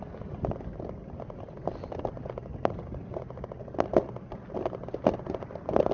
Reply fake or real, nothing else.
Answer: real